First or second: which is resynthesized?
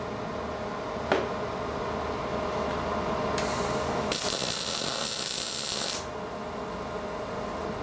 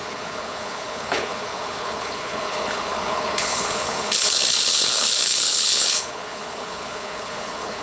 second